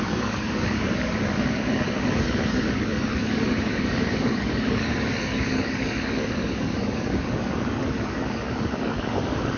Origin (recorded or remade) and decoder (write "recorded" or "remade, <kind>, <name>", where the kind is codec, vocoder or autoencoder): remade, codec, DAC